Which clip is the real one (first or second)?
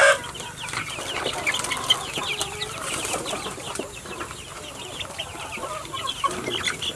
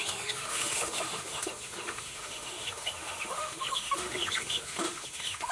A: first